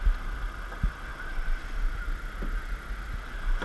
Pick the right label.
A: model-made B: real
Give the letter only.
B